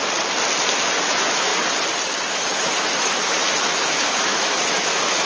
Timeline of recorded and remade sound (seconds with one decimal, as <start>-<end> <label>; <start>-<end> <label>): 0.0-1.1 recorded; 1.1-1.5 remade; 1.5-2.3 recorded; 2.3-5.3 remade